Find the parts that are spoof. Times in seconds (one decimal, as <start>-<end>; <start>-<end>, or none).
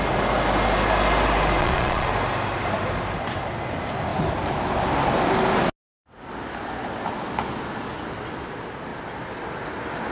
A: 1.6-2.1